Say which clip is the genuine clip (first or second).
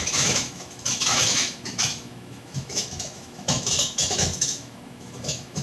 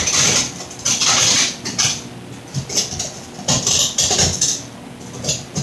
second